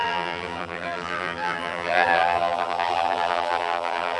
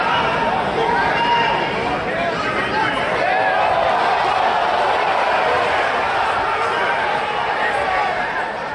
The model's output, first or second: first